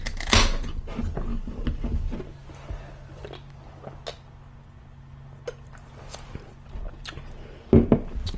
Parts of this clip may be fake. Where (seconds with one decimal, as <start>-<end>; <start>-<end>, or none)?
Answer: none